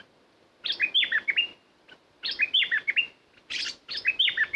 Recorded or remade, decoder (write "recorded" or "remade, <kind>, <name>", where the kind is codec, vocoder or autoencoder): recorded